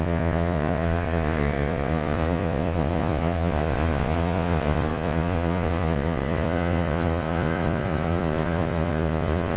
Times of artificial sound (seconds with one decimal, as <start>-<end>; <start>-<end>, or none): 0.0-9.6